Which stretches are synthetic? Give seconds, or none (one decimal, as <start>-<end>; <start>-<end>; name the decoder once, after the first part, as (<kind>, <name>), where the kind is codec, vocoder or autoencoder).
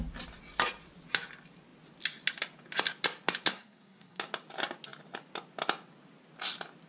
3.5-4.2 (codec, SNAC)